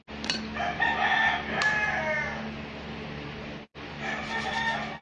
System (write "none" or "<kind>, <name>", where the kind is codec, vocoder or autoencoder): none